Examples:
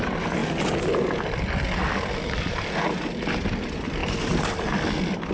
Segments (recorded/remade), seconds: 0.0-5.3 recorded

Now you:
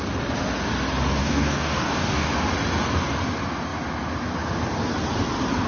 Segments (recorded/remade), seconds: 0.0-1.2 recorded; 1.2-2.3 remade; 2.3-5.7 recorded

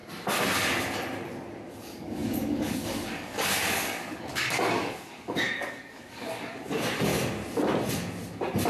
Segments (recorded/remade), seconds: 0.0-1.7 recorded; 1.7-7.1 remade; 7.1-8.7 recorded

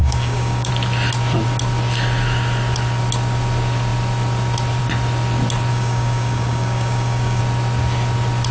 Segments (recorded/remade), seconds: 0.0-0.7 remade; 0.7-5.7 recorded; 5.7-7.4 remade; 7.4-8.5 recorded

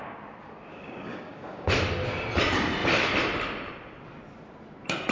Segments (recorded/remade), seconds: 0.0-0.7 recorded; 0.7-1.7 remade; 1.7-5.1 recorded